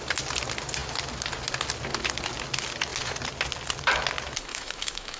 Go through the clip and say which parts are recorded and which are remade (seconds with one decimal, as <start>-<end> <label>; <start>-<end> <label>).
0.0-4.5 recorded; 4.5-5.2 remade